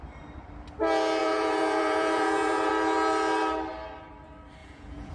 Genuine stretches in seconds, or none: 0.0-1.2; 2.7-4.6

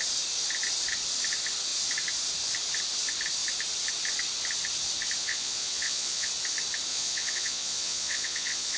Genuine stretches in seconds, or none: 0.0-5.2; 6.3-6.9

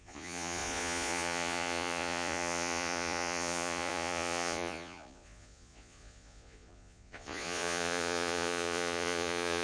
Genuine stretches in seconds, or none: none